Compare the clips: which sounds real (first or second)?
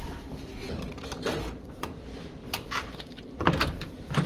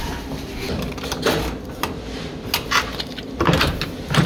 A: second